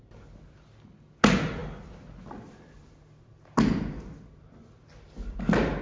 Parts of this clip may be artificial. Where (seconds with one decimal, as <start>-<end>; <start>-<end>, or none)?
none